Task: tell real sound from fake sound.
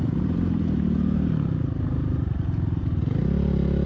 real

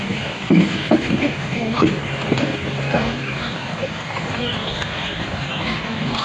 fake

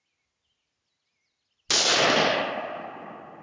real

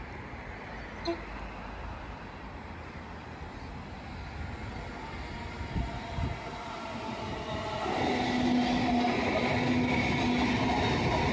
real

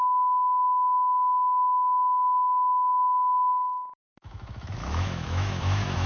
fake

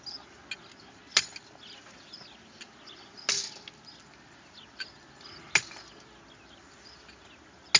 real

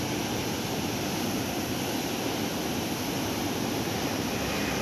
real